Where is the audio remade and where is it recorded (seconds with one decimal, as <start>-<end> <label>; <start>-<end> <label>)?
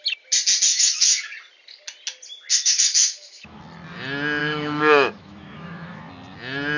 0.0-0.7 recorded; 0.7-1.3 remade; 1.3-2.5 recorded; 2.5-3.6 remade; 3.6-4.4 recorded; 4.4-6.1 remade; 6.1-6.8 recorded